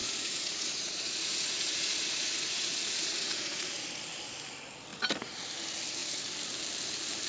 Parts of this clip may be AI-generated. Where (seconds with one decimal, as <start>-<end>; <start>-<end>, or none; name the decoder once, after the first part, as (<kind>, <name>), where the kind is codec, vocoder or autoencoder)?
0.0-3.7 (vocoder, Vocos)